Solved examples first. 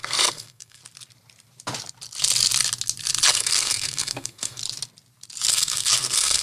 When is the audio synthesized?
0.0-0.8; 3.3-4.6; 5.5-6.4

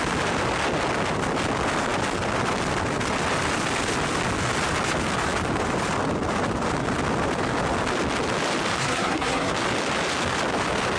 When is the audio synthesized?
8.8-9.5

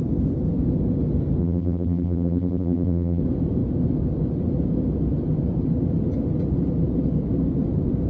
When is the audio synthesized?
1.4-3.2

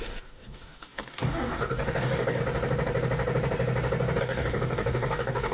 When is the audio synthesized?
0.0-2.4; 4.2-5.5

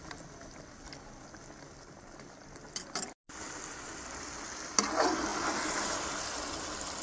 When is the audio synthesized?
none